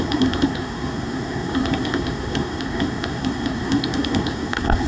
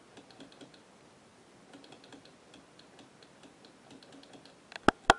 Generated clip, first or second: first